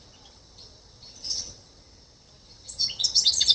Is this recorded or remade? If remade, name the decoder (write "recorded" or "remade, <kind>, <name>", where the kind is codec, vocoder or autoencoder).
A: remade, vocoder, WaveNeXt